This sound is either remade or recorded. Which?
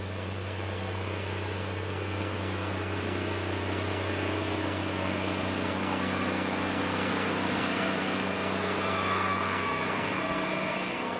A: remade